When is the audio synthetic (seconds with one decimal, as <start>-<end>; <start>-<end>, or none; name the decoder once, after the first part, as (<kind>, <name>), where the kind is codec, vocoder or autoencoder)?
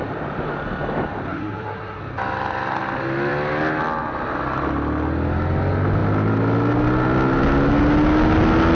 1.3-2.0 (codec, SNAC)